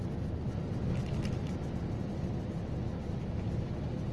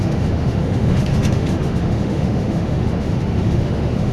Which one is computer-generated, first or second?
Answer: second